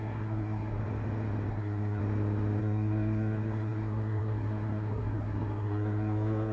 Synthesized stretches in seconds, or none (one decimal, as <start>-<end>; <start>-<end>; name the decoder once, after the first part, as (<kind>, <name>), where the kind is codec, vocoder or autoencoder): 0.0-0.8 (codec, SNAC); 1.5-2.0; 2.6-6.5